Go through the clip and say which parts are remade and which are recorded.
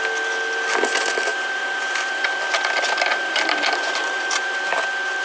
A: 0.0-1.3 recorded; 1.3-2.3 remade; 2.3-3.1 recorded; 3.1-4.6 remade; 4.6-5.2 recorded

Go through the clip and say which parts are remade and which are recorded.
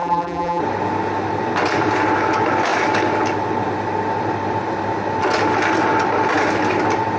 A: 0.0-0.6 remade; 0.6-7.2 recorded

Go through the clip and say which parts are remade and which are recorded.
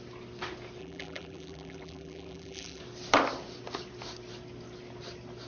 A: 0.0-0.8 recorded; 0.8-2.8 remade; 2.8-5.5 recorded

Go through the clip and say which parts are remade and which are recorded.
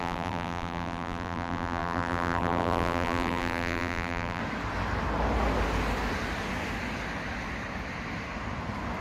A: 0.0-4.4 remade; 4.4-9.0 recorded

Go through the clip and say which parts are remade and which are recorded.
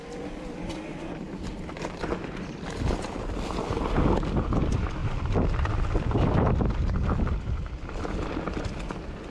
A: 0.0-0.9 recorded; 0.9-1.6 remade; 1.6-5.0 recorded; 5.0-8.3 remade; 8.3-9.3 recorded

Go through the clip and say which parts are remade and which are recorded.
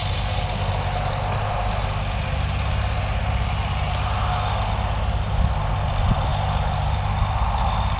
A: 0.0-8.0 recorded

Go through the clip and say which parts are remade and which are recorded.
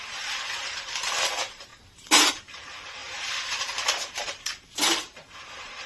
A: 0.0-5.9 remade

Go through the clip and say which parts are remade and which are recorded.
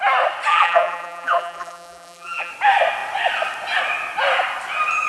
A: 0.0-0.5 recorded; 0.5-2.5 remade; 2.5-5.1 recorded